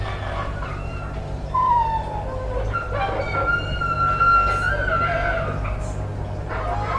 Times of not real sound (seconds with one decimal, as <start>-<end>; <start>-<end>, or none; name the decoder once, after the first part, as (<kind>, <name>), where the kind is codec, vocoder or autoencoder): none